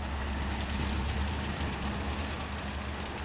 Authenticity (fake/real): real